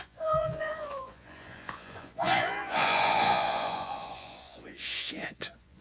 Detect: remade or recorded remade